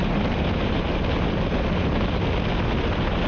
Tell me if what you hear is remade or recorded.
recorded